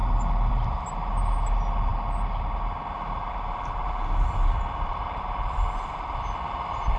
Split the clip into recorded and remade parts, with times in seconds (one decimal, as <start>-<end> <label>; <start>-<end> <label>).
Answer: 0.0-7.0 recorded